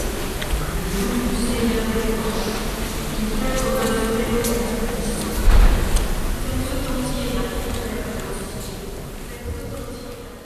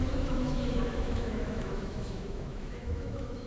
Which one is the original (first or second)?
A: first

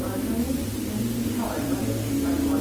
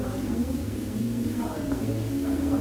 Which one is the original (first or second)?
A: first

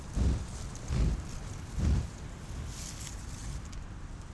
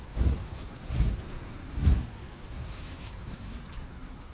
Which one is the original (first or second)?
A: first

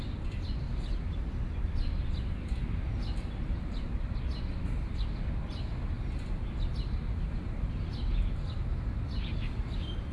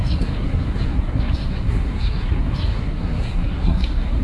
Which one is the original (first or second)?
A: first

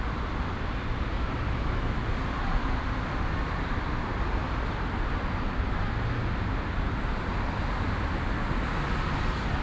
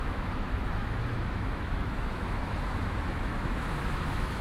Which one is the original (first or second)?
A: first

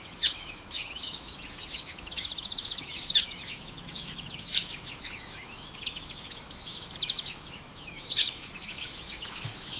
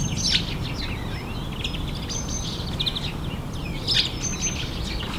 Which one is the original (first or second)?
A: second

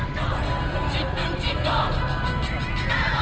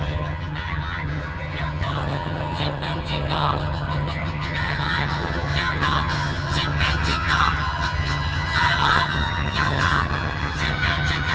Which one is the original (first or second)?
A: first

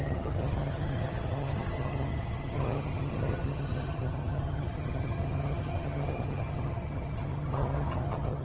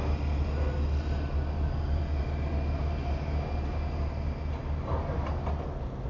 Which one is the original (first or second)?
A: second